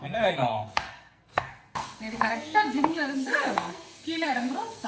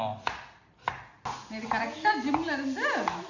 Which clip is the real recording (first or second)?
second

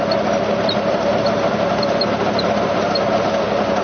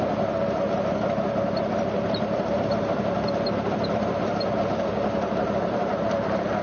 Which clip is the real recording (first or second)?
first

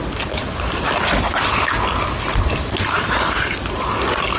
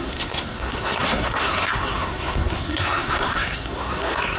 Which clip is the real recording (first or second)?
first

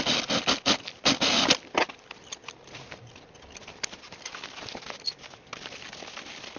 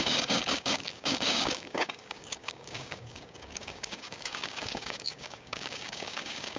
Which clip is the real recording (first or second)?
first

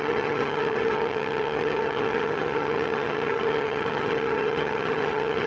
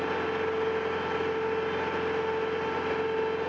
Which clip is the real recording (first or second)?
second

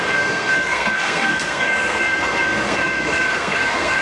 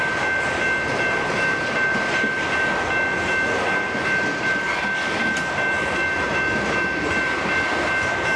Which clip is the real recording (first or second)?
second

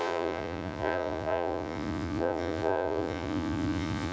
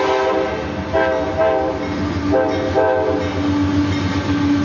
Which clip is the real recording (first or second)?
second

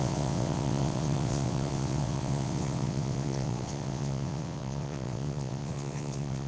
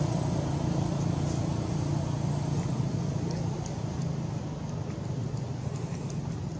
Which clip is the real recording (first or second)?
second